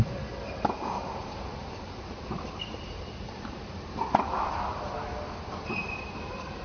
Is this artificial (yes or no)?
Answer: no